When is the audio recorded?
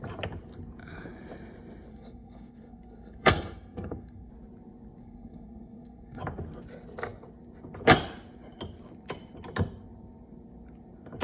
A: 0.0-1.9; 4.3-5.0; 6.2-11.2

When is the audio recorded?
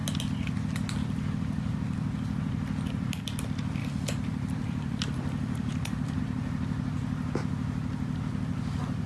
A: 0.0-3.8; 6.2-9.1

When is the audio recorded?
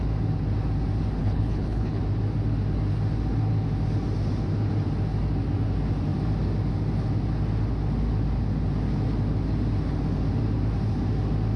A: 0.0-1.2; 2.0-11.6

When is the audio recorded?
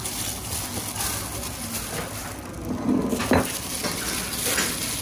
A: 0.0-5.0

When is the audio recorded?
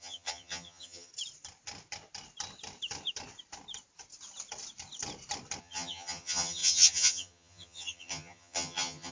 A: 1.1-5.6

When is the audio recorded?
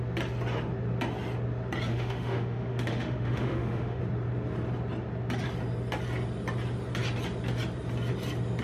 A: 0.0-1.9; 4.0-8.6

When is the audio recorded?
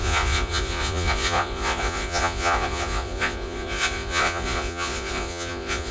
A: none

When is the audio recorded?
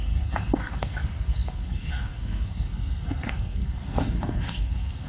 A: none